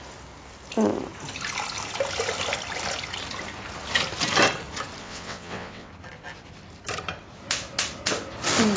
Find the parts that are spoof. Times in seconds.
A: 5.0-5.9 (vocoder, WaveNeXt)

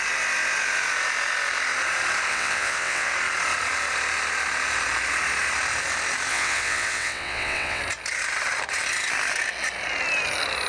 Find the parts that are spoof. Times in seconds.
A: 2.3-3.1 (vocoder, WaveNeXt); 6.3-7.8

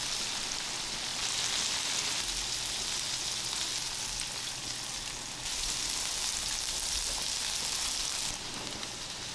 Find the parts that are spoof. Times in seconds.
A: none

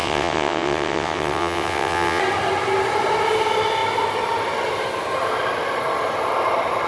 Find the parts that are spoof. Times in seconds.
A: 0.0-2.2 (vocoder, WaveNeXt)

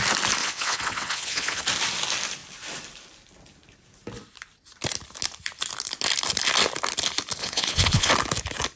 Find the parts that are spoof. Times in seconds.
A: 0.4-1.6 (vocoder, WaveNeXt); 7.4-8.1